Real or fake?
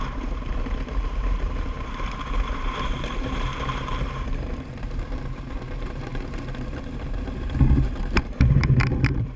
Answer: fake